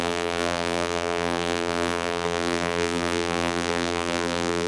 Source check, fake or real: fake